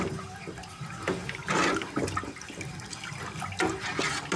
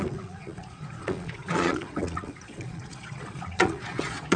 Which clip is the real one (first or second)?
first